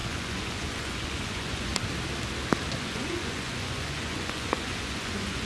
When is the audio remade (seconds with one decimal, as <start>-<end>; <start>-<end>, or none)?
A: 0.0-1.7; 2.7-5.5